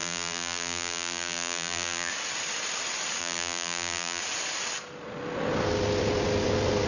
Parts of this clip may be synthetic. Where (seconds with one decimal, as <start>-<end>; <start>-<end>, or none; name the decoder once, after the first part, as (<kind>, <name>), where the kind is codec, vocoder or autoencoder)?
0.0-2.1 (vocoder, BigVGAN v2); 3.2-4.2